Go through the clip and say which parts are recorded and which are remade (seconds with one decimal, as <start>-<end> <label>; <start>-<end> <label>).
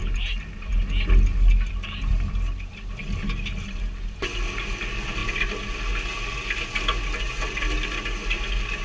0.0-8.8 recorded